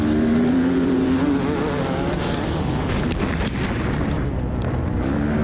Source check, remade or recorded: recorded